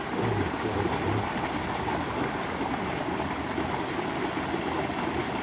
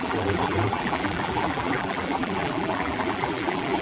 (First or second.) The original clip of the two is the first